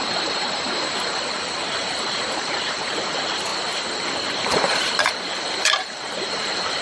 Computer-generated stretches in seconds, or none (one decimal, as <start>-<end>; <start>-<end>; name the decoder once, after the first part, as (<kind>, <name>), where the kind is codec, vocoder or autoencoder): 0.0-3.5 (vocoder, BigVGAN v2); 4.3-6.8